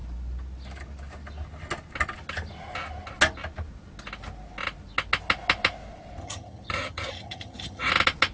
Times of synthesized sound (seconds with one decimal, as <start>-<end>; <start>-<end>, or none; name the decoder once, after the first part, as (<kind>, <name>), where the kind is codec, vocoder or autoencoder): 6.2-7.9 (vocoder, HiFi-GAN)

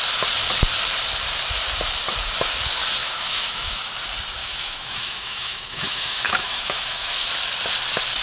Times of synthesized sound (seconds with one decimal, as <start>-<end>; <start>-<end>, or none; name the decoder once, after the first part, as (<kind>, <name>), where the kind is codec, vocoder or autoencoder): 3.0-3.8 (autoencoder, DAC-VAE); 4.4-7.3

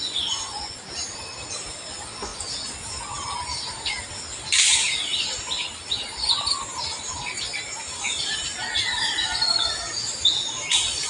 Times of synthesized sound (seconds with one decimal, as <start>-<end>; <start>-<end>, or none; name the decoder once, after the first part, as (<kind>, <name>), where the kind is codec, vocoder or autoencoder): 0.0-0.7 (vocoder, Vocos)